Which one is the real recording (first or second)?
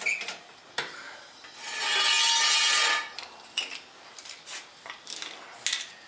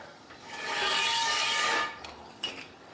first